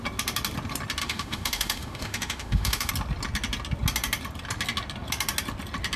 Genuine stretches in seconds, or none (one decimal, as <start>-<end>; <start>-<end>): 0.0-1.0; 2.9-6.0